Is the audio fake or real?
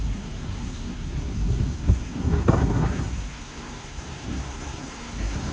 fake